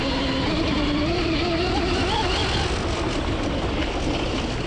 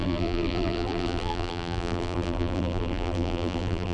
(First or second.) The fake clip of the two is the second